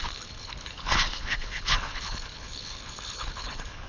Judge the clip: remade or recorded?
remade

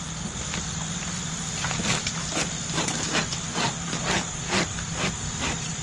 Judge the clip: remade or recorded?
recorded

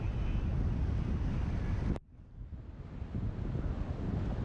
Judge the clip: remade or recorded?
recorded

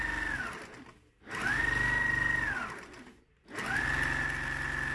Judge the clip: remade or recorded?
recorded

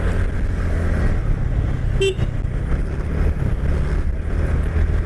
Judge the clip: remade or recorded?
recorded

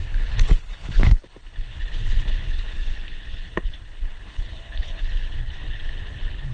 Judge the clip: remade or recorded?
remade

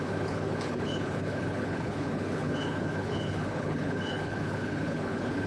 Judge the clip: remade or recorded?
remade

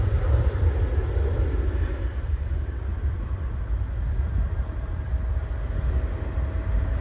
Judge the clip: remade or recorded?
recorded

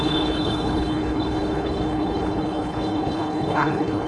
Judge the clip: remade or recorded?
remade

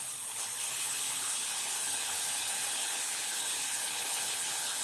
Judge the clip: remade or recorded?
remade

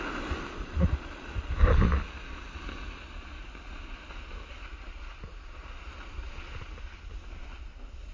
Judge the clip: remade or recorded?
recorded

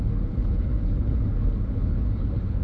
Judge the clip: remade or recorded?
remade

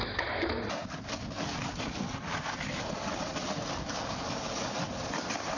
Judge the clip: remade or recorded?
recorded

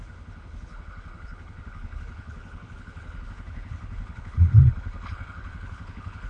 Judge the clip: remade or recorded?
remade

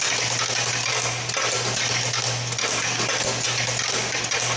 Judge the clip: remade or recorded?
recorded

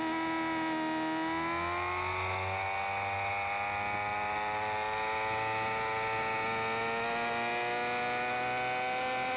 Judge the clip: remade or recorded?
recorded